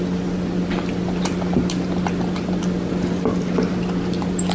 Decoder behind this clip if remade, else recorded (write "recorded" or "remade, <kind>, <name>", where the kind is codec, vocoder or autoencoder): recorded